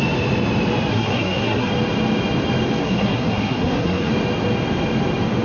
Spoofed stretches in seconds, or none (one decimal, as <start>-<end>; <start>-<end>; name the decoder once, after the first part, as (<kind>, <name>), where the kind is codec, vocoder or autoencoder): 0.9-1.7 (codec, SNAC); 2.8-4.1